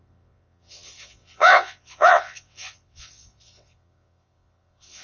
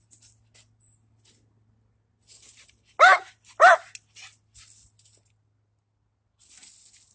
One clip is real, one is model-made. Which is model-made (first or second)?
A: first